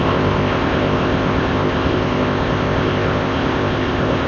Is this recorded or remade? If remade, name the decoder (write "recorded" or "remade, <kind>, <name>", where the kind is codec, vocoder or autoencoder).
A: remade, codec, ZipCodec